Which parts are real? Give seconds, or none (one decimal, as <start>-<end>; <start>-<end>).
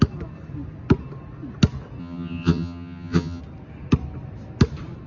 0.0-2.0; 3.4-5.1